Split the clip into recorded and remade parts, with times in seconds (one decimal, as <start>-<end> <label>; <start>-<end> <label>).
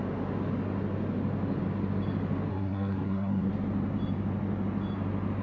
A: 0.0-2.5 recorded; 2.5-3.5 remade; 3.5-5.4 recorded